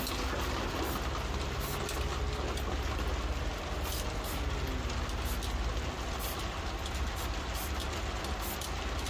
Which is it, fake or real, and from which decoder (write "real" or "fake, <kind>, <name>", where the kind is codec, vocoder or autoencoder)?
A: real